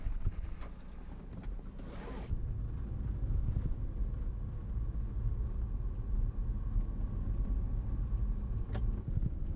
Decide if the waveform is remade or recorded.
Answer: recorded